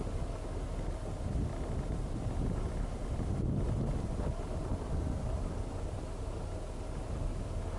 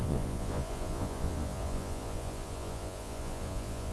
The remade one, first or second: second